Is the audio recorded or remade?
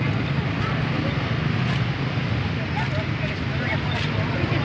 recorded